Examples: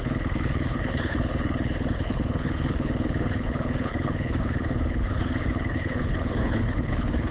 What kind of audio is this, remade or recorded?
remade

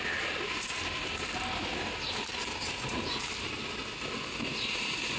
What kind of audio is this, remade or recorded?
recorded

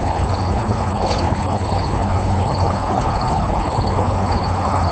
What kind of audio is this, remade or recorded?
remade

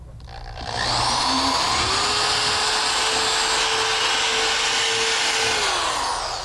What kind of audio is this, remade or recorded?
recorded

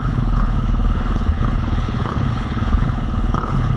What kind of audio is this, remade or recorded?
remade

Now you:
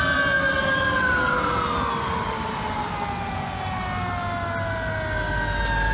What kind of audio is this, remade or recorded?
recorded